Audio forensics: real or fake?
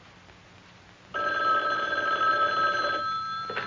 real